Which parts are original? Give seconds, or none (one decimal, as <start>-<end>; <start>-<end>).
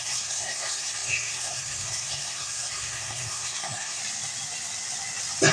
4.0-5.5